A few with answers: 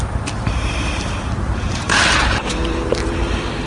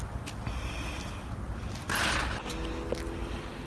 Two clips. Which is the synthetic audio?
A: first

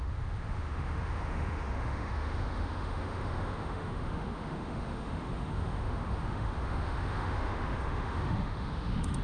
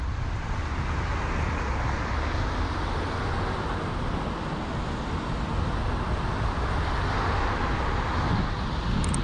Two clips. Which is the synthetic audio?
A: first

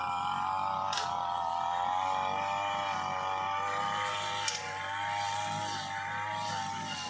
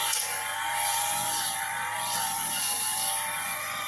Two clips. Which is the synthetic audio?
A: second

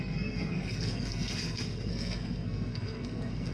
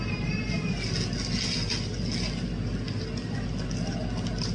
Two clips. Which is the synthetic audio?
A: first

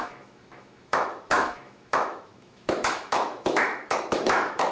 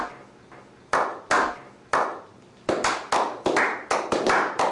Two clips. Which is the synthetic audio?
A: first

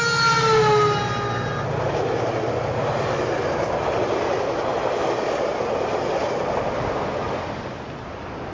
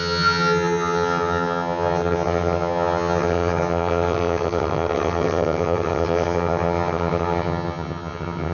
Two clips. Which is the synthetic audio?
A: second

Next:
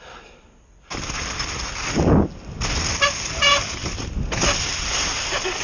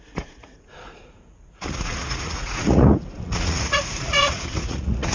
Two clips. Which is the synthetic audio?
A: second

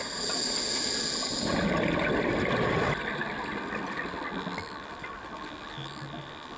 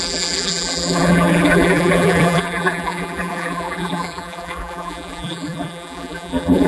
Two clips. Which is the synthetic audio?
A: second